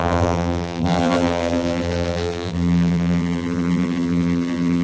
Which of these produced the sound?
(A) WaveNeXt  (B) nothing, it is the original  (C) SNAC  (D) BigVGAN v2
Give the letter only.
D